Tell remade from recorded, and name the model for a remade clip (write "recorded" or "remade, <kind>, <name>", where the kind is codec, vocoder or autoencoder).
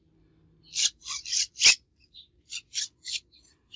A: recorded